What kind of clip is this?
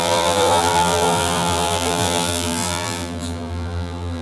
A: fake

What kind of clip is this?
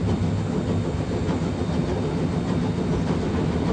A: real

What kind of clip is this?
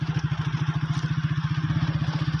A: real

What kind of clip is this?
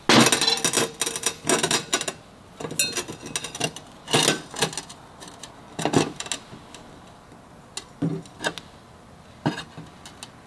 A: real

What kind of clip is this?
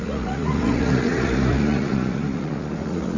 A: fake